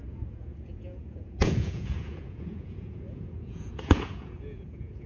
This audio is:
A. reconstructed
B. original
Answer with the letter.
A